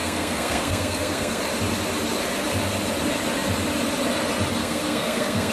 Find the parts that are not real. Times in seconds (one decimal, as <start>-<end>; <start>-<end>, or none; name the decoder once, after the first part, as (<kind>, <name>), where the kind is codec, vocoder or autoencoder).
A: 0.0-1.4 (codec, SNAC); 4.6-5.5